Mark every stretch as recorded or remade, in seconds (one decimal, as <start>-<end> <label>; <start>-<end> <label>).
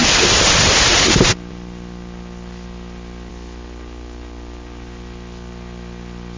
0.0-6.4 recorded